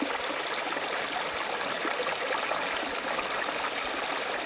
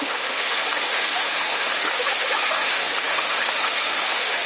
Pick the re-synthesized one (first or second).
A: second